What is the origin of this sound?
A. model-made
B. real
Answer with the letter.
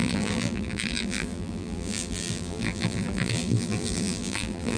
A